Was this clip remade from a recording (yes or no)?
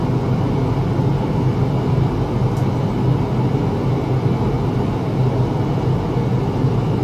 no